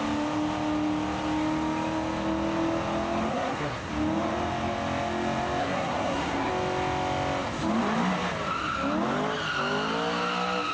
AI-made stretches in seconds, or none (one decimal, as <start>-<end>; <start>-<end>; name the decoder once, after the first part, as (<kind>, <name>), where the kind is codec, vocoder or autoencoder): 3.3-3.9 (codec, SNAC); 5.6-6.5